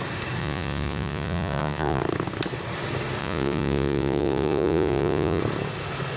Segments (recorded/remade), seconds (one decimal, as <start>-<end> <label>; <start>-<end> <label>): 0.0-0.4 recorded; 0.4-2.0 remade; 2.0-3.2 recorded; 3.2-5.4 remade; 5.4-6.2 recorded